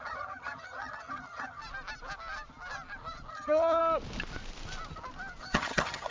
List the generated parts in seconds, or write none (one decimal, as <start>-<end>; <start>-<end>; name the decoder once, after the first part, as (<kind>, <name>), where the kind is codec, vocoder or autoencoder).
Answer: 0.0-1.6 (vocoder, HiFi-GAN); 3.3-3.8; 5.4-6.1